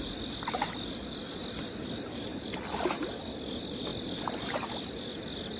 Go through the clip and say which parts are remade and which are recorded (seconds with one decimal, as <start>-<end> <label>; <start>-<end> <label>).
0.0-5.6 recorded